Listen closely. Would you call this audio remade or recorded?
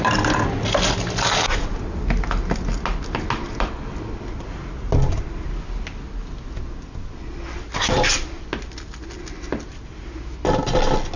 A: recorded